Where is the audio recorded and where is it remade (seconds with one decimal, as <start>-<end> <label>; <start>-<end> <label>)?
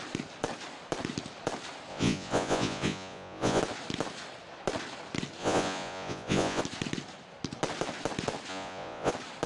0.0-1.9 recorded; 1.9-3.6 remade; 3.6-5.4 recorded; 5.4-6.6 remade; 6.6-8.5 recorded; 8.5-9.1 remade; 9.1-9.5 recorded